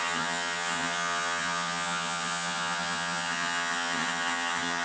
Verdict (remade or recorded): remade